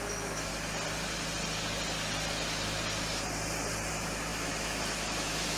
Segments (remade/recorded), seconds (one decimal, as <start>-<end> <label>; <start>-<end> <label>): 0.0-0.5 remade; 0.5-3.9 recorded; 3.9-5.6 remade